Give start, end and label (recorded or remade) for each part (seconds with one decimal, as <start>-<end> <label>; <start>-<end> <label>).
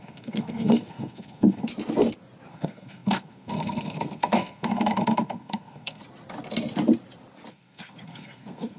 0.0-1.7 remade; 1.7-2.5 recorded; 2.5-6.0 remade; 6.0-7.5 recorded; 7.5-8.8 remade